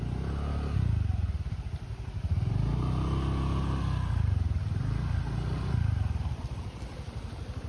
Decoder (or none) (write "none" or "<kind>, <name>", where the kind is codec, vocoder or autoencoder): none